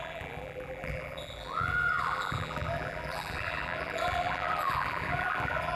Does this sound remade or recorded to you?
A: remade